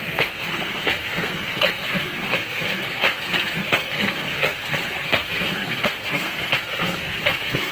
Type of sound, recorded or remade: remade